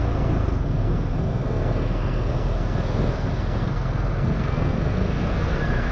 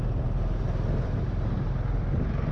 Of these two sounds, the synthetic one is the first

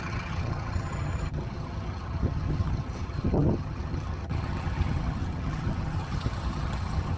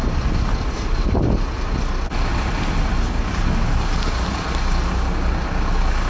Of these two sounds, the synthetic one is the first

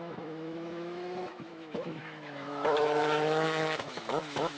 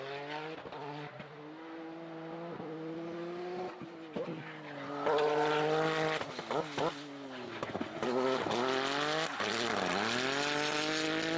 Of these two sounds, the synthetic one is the first